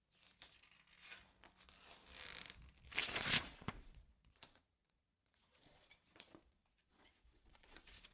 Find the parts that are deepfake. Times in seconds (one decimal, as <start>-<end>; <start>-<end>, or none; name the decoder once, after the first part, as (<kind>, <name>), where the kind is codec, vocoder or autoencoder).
3.0-8.1 (vocoder, Vocos)

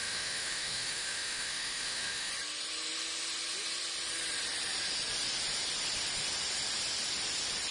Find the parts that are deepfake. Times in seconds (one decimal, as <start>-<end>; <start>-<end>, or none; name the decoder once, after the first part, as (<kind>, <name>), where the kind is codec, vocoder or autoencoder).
0.0-2.3 (autoencoder, DAC-VAE)

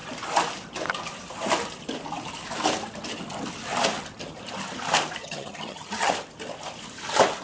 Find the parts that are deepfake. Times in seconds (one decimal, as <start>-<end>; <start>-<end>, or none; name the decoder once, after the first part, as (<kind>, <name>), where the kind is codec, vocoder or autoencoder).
5.2-6.1 (vocoder, HiFi-GAN)

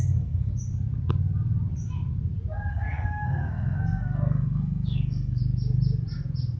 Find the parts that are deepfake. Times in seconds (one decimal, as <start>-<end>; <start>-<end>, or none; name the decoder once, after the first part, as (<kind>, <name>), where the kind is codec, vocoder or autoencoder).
0.0-0.5 (codec, SNAC); 2.7-5.4

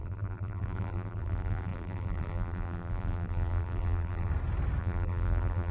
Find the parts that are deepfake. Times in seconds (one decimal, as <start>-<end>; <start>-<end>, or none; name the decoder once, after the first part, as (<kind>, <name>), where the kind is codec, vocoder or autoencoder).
0.0-4.3 (vocoder, BigVGAN v2); 4.8-5.7

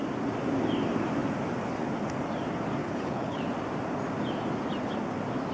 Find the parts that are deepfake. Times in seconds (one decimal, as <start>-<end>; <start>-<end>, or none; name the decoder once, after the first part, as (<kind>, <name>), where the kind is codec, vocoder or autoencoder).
2.8-3.4 (codec, HILCodec)